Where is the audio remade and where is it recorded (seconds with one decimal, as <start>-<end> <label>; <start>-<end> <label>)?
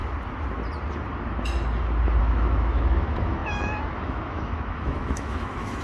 0.0-2.2 recorded; 2.2-5.8 remade